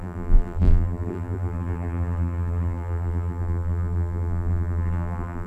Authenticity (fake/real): fake